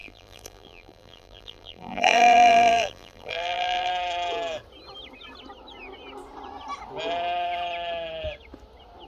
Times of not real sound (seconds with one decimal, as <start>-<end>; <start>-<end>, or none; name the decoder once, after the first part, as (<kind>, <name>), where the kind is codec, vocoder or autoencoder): 0.0-3.9 (vocoder, BigVGAN v2)